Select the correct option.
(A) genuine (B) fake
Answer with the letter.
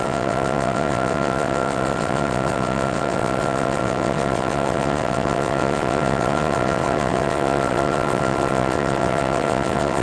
B